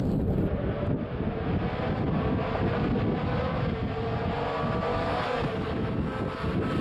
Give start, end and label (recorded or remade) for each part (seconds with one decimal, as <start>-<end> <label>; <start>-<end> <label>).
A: 0.0-4.9 recorded; 4.9-5.9 remade; 5.9-6.8 recorded